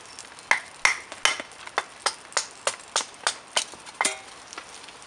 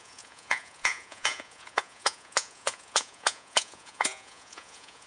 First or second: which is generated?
second